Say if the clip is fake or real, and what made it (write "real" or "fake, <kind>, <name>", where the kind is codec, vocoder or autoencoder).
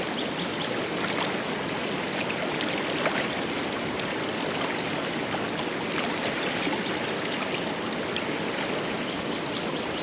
real